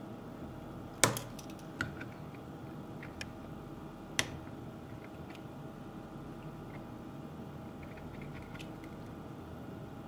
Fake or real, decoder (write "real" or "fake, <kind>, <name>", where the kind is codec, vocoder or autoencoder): real